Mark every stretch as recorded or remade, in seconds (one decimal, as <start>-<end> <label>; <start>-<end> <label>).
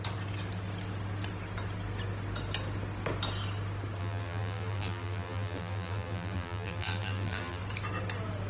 0.0-4.0 recorded; 4.0-7.6 remade; 7.6-8.5 recorded